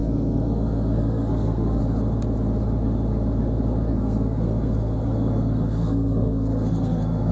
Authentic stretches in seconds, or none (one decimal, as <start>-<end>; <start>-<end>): 1.8-3.9